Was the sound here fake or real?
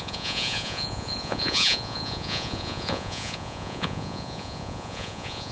fake